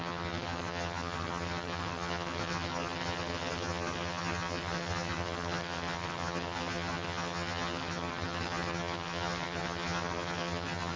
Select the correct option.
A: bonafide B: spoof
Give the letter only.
B